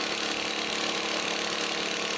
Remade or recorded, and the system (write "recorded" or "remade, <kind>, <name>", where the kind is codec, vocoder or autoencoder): recorded